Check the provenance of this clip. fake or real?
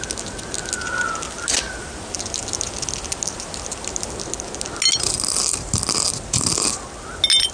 real